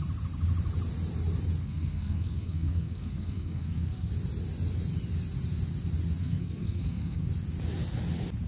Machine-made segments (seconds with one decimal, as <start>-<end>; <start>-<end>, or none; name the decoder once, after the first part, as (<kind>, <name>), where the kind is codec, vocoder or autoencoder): 1.6-4.1 (codec, SNAC); 6.2-7.3